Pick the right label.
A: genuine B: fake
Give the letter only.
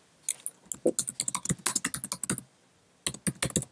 A